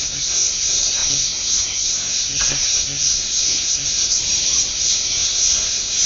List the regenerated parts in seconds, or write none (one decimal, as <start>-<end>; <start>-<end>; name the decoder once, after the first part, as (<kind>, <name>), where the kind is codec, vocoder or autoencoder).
0.0-4.2 (codec, SNAC); 4.7-6.1